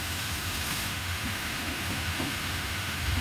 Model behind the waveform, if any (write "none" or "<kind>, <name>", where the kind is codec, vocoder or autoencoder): autoencoder, DAC-VAE